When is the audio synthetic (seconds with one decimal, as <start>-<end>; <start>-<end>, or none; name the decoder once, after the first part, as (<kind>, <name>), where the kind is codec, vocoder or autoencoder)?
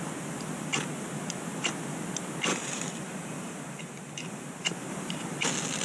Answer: 2.5-4.9 (vocoder, BigVGAN v2)